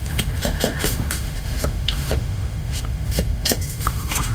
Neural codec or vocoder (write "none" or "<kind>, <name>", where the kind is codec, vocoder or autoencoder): autoencoder, DAC-VAE